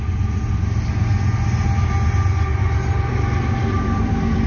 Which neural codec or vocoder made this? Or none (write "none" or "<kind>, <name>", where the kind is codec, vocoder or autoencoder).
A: none